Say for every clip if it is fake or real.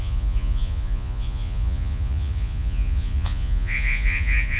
fake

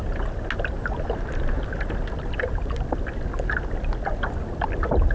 real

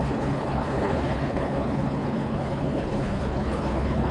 fake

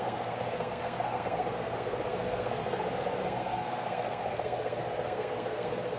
fake